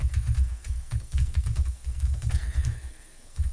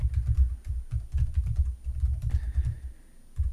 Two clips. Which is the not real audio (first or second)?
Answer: first